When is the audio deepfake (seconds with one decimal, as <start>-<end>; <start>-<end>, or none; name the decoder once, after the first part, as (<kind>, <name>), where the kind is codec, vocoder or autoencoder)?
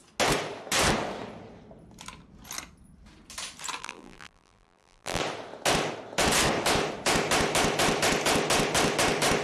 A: 3.8-5.2 (vocoder, BigVGAN v2)